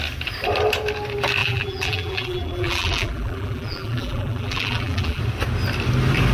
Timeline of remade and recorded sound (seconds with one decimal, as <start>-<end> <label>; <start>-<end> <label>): 0.0-1.4 recorded; 1.4-5.2 remade; 5.2-6.3 recorded